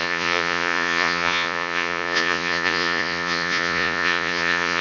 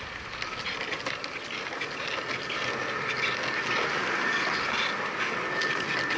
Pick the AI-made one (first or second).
first